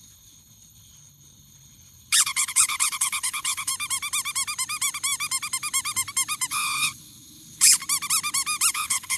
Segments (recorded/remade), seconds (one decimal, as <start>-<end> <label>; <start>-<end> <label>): 0.0-3.7 remade; 3.7-6.5 recorded; 6.5-7.8 remade; 7.8-8.7 recorded; 8.7-9.2 remade